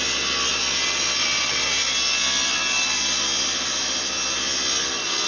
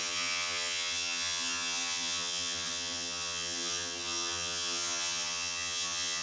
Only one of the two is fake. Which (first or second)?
second